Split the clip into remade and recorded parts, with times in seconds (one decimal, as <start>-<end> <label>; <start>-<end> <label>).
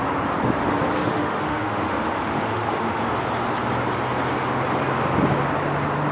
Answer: 0.0-1.0 recorded; 1.0-3.0 remade; 3.0-6.1 recorded